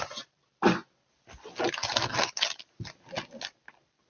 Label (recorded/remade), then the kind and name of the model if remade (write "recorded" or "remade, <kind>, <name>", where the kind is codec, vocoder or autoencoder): recorded